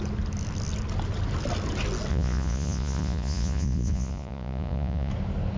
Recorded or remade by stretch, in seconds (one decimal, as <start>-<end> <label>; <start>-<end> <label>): 0.0-2.1 recorded; 2.1-5.1 remade; 5.1-5.6 recorded